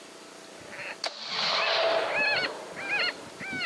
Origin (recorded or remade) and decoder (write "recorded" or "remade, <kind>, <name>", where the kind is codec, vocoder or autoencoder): recorded